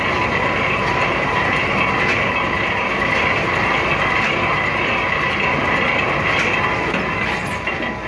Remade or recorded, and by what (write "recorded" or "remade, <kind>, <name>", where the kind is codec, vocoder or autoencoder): recorded